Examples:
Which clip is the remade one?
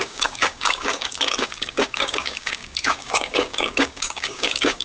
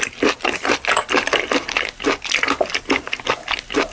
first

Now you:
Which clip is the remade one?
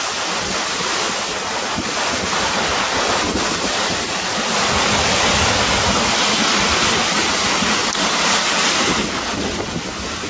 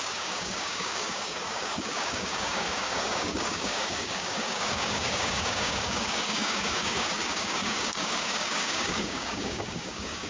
second